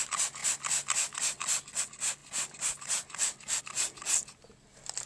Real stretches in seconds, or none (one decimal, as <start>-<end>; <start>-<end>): 0.0-5.1